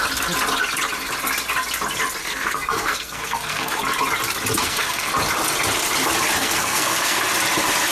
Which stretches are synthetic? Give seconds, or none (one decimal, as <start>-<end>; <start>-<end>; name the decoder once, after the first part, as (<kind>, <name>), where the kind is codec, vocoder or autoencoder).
2.2-3.8 (codec, SNAC); 4.6-5.1; 6.4-7.2